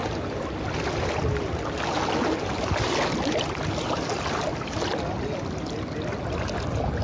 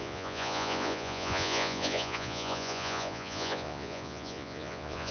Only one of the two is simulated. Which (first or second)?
second